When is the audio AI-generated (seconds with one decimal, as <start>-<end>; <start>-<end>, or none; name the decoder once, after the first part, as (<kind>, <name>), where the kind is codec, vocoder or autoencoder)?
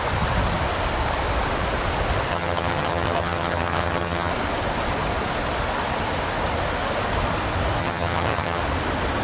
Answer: 2.3-4.3 (vocoder, HiFi-GAN); 7.8-8.6